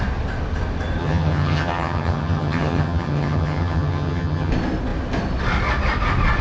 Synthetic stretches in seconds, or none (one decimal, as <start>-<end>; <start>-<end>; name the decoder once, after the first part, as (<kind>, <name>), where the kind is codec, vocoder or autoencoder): 1.0-4.5 (vocoder, HiFi-GAN)